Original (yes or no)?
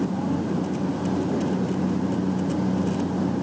yes